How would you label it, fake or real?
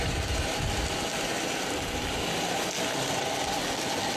real